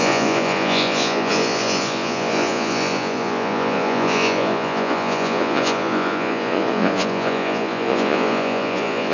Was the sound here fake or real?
fake